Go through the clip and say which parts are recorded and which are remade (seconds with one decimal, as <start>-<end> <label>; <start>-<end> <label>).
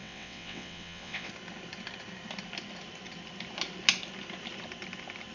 0.0-1.3 remade; 1.3-5.3 recorded